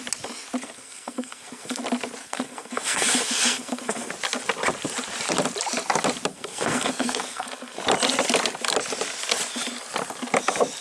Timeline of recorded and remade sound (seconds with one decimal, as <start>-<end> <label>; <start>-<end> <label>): 0.0-0.6 recorded; 0.6-1.8 remade; 1.8-2.2 recorded; 2.2-4.1 remade; 4.1-6.3 recorded; 6.3-7.8 remade; 7.8-10.8 recorded